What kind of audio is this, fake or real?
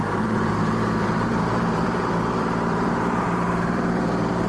fake